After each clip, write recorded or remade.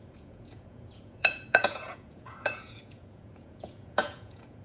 remade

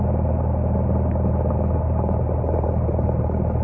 recorded